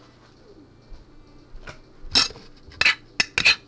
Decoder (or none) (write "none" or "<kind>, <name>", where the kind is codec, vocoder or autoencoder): none